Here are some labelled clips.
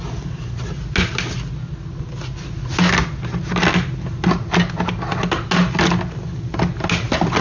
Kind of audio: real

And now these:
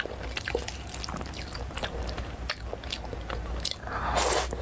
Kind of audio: real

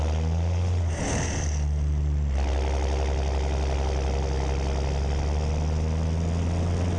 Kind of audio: real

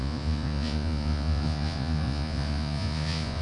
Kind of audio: fake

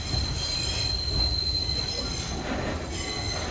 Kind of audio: real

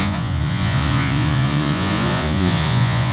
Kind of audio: fake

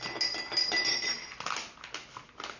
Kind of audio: real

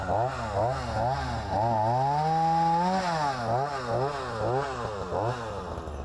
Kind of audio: real